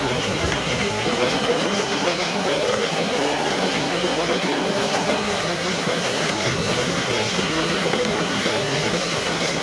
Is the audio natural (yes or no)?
no